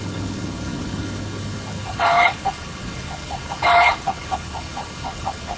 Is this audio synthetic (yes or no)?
yes